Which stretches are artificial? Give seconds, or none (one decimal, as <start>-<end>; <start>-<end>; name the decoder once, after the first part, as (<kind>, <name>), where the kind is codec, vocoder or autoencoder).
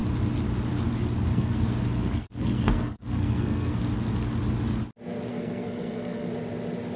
1.3-3.8 (codec, SNAC); 5.3-6.3